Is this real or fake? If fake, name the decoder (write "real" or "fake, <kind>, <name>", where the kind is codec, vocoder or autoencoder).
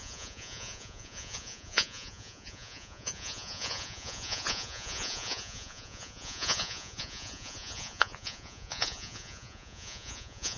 fake, vocoder, Vocos